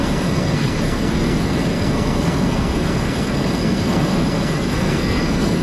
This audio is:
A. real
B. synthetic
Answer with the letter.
B